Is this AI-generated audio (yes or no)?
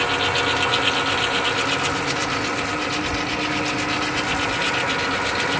no